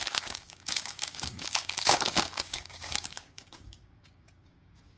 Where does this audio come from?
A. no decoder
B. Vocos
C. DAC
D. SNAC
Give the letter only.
C